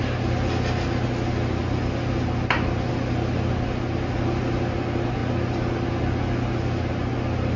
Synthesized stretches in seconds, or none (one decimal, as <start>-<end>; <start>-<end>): none